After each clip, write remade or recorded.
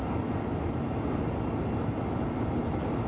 recorded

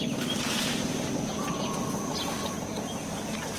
recorded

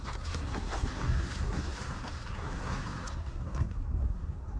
remade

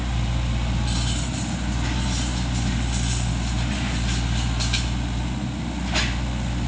recorded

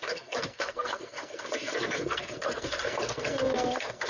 remade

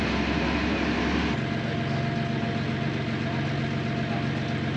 recorded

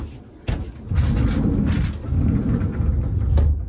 recorded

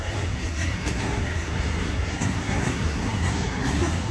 remade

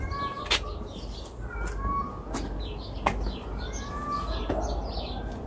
recorded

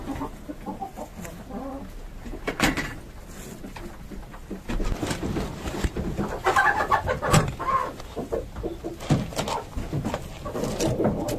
recorded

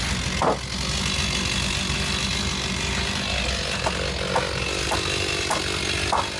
recorded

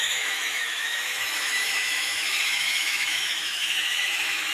remade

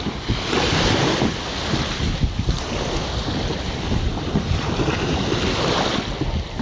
recorded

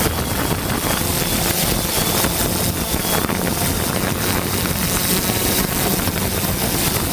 remade